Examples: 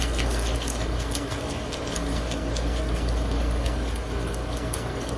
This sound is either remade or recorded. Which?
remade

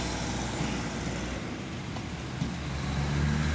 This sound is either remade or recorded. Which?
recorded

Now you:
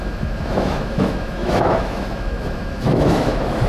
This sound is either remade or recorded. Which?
remade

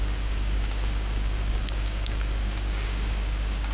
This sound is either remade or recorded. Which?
remade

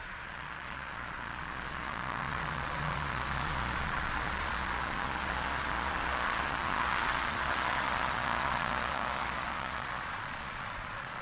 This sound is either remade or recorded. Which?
remade